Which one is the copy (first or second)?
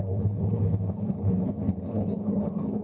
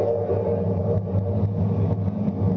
first